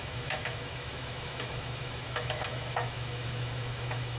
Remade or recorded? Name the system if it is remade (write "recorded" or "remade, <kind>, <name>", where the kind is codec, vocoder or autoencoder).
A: remade, autoencoder, DAC-VAE